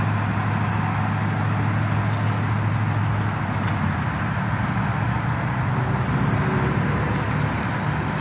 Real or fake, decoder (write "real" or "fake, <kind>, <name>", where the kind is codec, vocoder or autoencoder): real